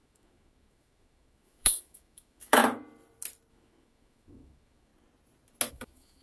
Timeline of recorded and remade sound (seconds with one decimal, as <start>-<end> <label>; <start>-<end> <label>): 0.0-2.6 remade; 2.6-3.5 recorded; 3.5-4.9 remade; 4.9-5.7 recorded; 5.7-6.2 remade